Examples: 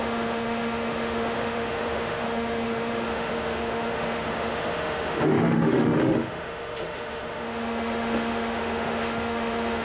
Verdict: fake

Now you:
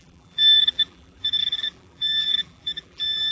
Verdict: fake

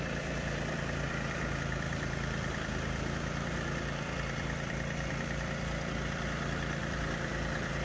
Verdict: fake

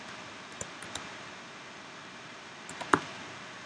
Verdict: real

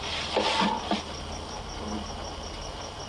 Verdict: real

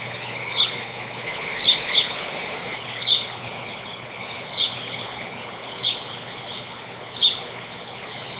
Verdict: fake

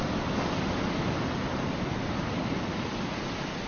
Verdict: real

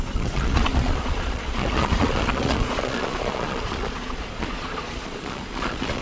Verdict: fake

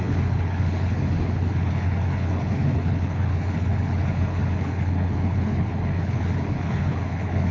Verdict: fake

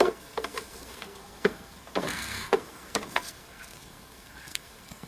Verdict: fake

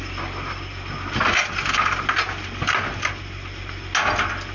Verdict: real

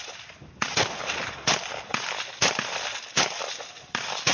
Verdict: real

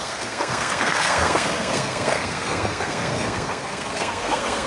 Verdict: fake